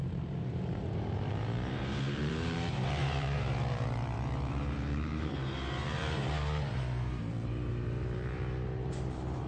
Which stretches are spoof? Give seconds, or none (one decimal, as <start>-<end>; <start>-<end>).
0.0-9.5